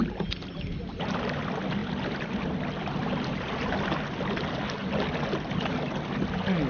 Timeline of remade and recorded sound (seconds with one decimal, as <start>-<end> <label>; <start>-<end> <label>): 0.0-6.7 recorded